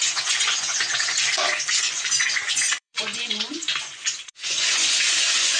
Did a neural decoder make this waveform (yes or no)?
yes